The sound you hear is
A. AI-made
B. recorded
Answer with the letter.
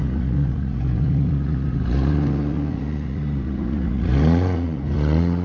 A